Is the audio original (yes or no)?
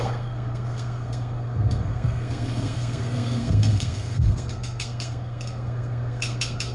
no